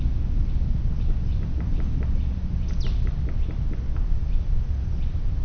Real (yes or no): yes